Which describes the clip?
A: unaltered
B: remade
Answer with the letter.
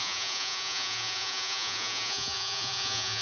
B